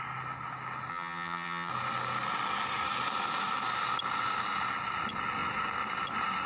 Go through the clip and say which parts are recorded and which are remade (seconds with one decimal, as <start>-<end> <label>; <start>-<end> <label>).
0.0-0.9 recorded; 0.9-1.7 remade; 1.7-6.5 recorded